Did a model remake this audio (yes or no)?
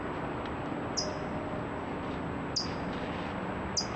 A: no